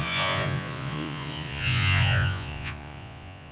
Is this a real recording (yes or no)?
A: no